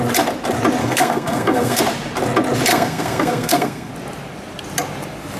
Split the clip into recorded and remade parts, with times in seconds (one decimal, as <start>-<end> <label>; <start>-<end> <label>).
0.0-0.8 recorded; 0.8-1.8 remade; 1.8-2.7 recorded; 2.7-3.9 remade; 3.9-5.4 recorded